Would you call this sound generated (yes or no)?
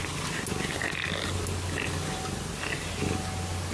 no